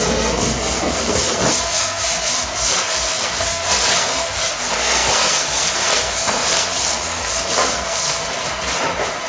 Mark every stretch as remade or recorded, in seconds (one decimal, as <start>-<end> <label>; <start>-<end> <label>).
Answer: 0.0-8.2 remade; 8.2-9.3 recorded